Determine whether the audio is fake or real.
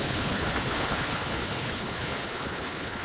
fake